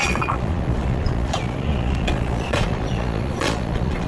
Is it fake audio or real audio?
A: fake